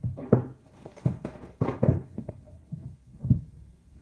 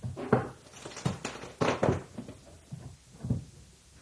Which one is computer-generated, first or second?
first